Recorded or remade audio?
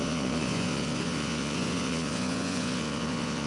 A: remade